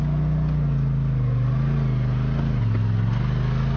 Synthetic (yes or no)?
no